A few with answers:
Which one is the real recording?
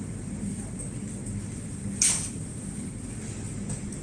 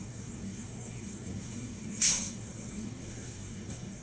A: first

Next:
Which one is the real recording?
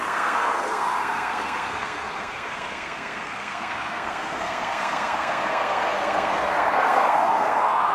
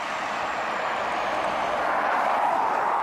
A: second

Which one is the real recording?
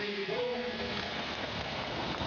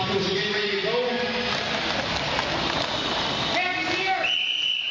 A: second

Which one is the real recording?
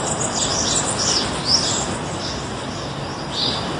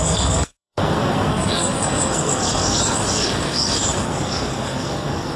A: first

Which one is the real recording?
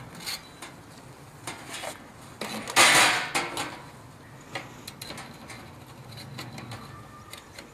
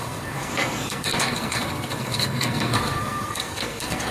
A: first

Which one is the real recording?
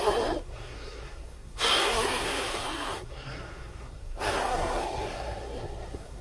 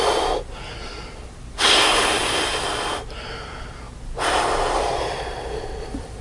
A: second